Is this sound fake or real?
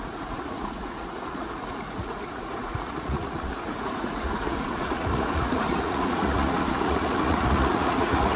fake